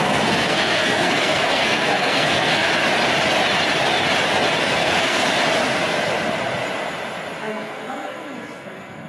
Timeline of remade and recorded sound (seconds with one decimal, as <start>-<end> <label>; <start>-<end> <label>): 0.0-2.7 remade; 2.7-4.6 recorded; 4.6-5.2 remade; 5.2-7.4 recorded; 7.4-9.1 remade